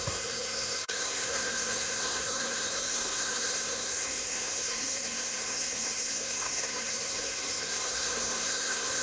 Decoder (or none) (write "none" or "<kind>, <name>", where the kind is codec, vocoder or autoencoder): codec, SNAC